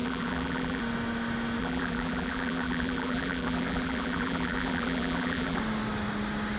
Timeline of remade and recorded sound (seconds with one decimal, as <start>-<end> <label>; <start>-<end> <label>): 0.0-0.8 remade; 0.8-1.6 recorded; 1.6-5.6 remade; 5.6-6.6 recorded